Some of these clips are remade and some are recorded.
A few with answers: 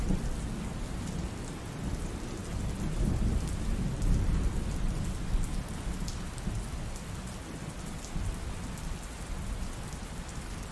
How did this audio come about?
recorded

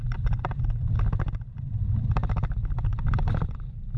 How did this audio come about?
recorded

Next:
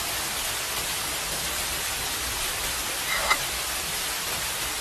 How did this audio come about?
recorded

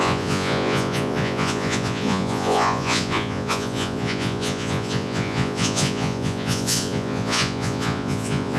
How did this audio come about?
remade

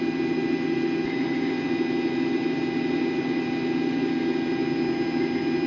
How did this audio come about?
recorded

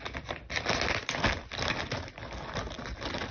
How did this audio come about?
recorded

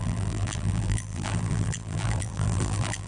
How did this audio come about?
remade